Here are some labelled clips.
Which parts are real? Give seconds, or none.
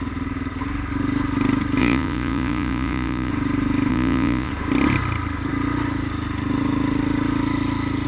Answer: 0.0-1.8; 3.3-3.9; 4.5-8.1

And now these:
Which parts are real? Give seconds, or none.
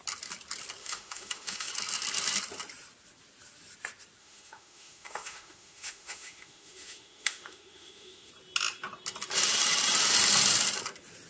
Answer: 0.0-0.8; 1.7-4.2; 8.3-11.3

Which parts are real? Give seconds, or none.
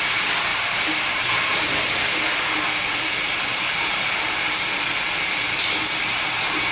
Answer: 0.0-0.5; 4.5-6.7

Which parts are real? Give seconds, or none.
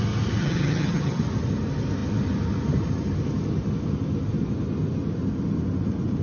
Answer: 0.0-0.4; 1.2-6.2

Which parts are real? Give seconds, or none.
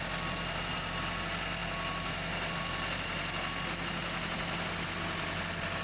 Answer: 0.0-5.8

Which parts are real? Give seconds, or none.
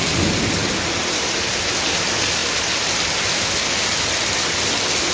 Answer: 0.0-5.1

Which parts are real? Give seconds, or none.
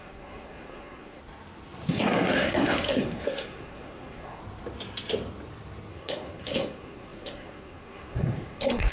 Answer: 1.2-1.9; 4.4-5.9